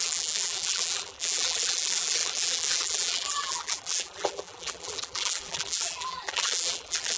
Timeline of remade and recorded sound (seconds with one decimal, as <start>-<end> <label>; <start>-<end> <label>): 0.0-7.2 remade